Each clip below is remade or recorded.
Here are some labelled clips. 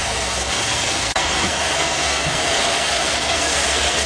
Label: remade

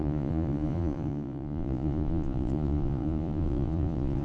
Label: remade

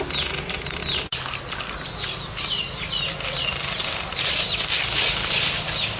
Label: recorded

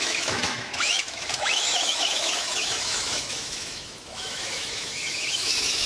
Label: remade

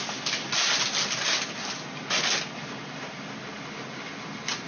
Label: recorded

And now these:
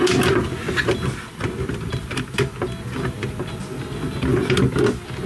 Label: recorded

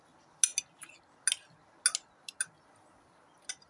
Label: recorded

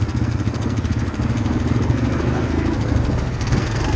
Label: remade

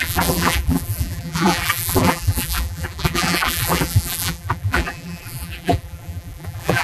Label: remade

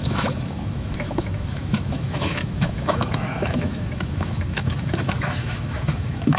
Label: remade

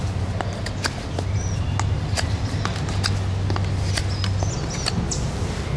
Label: recorded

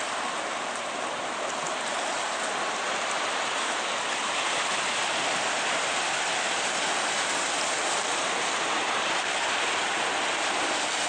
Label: recorded